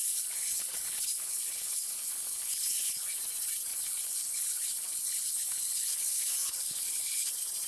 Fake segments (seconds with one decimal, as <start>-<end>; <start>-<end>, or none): 0.0-3.2; 3.7-7.3